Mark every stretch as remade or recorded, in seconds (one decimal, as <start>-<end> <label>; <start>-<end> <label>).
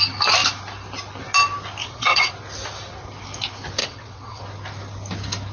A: 0.0-1.8 recorded; 1.8-2.3 remade; 2.3-3.8 recorded; 3.8-4.4 remade; 4.4-5.5 recorded